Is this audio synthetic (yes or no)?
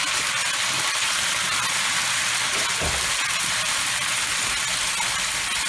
no